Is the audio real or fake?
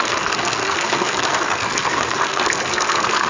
fake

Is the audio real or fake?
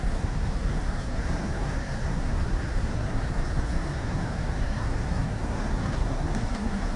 fake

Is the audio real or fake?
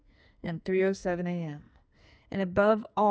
fake